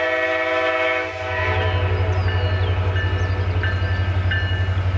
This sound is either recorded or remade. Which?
recorded